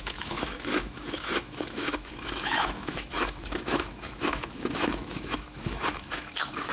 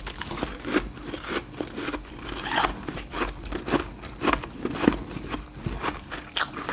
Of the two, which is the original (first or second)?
second